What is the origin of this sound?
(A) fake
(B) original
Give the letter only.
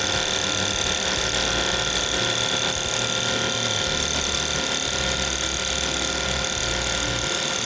B